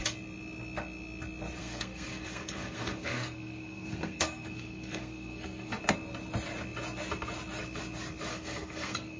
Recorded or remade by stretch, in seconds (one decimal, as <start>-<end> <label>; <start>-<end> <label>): 0.0-1.6 recorded; 1.6-5.8 remade; 5.8-8.3 recorded; 8.3-9.2 remade